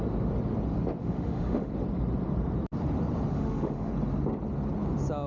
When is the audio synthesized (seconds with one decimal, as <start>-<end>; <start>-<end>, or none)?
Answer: 1.0-1.7; 3.3-3.9